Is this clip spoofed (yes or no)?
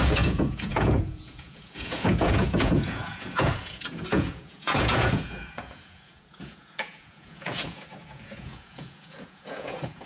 yes